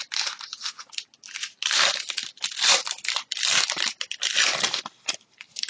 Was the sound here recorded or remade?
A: recorded